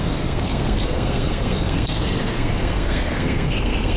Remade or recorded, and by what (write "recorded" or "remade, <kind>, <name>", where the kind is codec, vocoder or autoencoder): remade, codec, SNAC